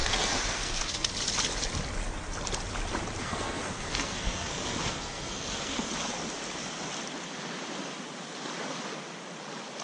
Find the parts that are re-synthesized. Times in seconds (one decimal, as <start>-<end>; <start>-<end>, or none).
0.0-1.1; 3.2-5.9